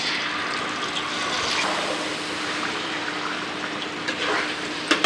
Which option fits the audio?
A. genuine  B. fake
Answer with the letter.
A